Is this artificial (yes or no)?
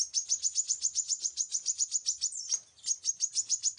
no